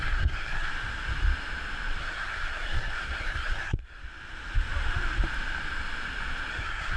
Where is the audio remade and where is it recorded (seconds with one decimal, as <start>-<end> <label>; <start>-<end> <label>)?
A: 0.0-0.7 remade; 0.7-2.0 recorded; 2.0-4.0 remade; 4.0-6.5 recorded; 6.5-7.0 remade